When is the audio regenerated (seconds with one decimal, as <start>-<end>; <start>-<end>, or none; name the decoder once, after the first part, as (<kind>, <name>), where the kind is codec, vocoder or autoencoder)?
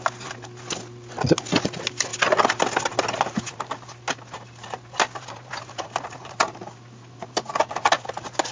none